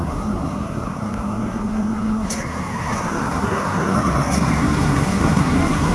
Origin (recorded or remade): remade